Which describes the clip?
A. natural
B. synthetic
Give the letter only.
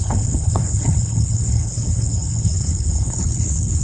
B